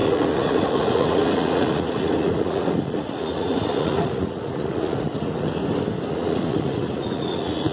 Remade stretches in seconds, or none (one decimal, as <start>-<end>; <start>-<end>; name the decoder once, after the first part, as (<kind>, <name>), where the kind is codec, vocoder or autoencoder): 0.0-5.6 (vocoder, Vocos); 6.1-7.7